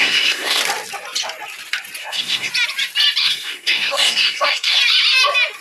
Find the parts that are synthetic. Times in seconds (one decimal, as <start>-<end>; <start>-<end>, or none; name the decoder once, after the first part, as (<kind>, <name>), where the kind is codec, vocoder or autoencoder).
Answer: 0.0-0.6 (codec, SNAC); 2.0-2.5; 3.2-4.8